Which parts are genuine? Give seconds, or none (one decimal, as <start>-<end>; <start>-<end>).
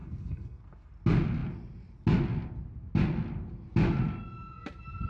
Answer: 0.9-5.1